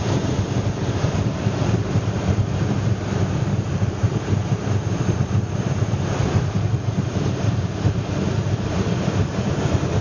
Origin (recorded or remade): remade